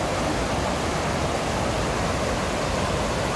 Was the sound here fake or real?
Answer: real